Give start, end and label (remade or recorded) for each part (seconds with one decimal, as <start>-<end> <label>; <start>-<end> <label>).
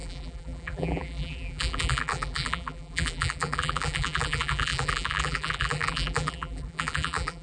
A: 0.0-7.4 remade